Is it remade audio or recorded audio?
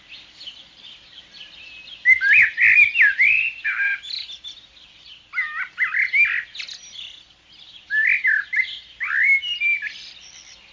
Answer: recorded